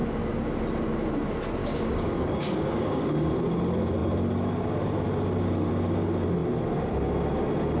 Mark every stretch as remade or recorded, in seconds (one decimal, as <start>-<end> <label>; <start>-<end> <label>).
0.0-1.6 recorded; 1.6-3.3 remade; 3.3-7.8 recorded

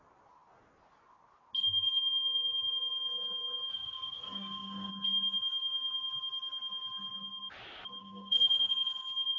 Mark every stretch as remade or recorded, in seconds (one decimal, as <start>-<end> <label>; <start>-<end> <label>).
0.0-3.7 recorded; 3.7-4.9 remade; 4.9-8.0 recorded; 8.0-8.7 remade; 8.7-9.4 recorded

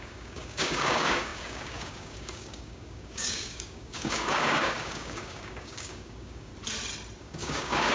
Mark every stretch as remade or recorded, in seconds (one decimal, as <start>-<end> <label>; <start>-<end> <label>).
0.0-6.5 remade; 6.5-7.2 recorded; 7.2-7.9 remade

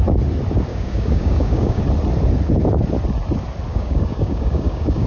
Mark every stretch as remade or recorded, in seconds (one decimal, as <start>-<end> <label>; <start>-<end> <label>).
0.0-0.7 recorded; 0.7-1.8 remade; 1.8-3.7 recorded; 3.7-5.1 remade

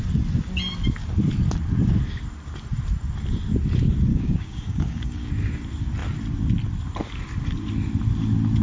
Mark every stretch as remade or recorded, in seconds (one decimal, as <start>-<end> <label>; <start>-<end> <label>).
0.0-4.1 recorded; 4.1-5.3 remade; 5.3-8.6 recorded